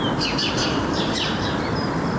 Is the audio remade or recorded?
remade